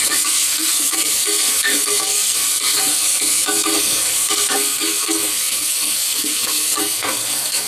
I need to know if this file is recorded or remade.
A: remade